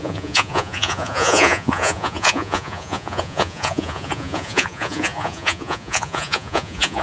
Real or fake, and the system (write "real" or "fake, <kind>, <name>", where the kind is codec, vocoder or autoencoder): fake, vocoder, Vocos